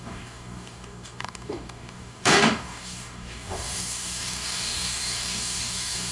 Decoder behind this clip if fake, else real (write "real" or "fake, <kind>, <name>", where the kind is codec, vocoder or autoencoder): fake, codec, DAC